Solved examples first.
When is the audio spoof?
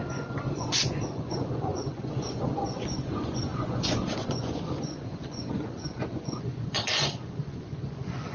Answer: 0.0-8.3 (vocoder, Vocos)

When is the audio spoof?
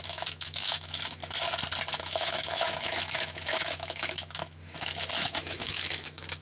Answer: 0.0-1.2 (autoencoder, DAC-VAE); 2.0-6.4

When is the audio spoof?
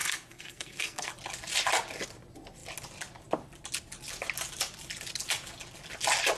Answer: 0.0-1.1 (codec, SNAC)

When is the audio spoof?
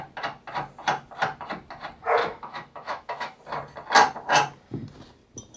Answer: 2.2-3.4 (autoencoder, DAC-VAE)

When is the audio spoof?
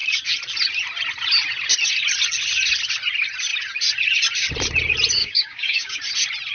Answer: 5.2-6.0 (codec, DAC)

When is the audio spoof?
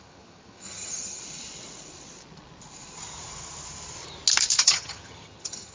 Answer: 0.0-1.2 (vocoder, HiFi-GAN); 4.6-5.7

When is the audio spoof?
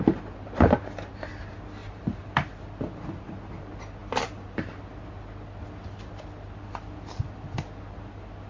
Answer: 1.8-2.5 (vocoder, BigVGAN v2); 4.0-4.7